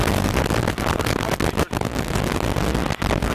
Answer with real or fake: real